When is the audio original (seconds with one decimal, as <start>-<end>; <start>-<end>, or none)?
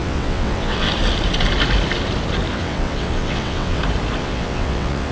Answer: 0.9-2.5; 3.8-4.2